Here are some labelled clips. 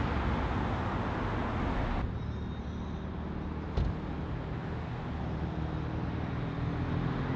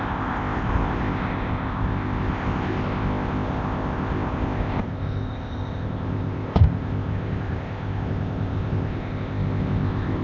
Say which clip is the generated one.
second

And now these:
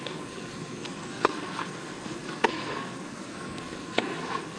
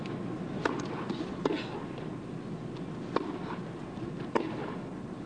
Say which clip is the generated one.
first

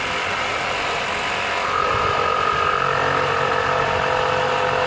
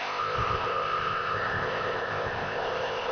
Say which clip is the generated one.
second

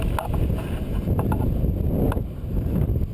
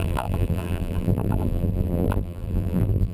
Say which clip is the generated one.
second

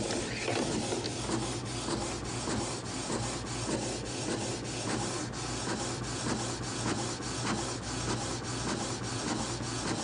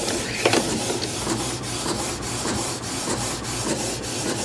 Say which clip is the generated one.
second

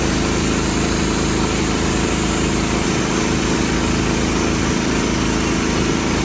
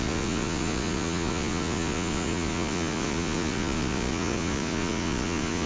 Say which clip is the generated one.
second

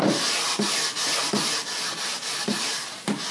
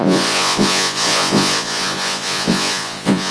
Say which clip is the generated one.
second